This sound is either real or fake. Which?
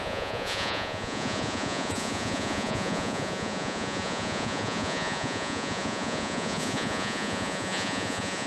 fake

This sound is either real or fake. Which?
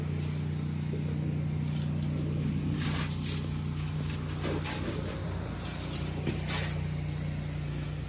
real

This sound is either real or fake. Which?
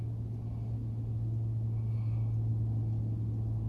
real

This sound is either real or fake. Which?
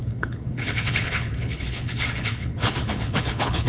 fake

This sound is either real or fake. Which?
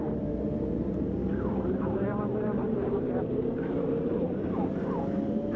fake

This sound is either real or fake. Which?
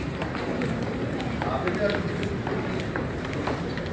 fake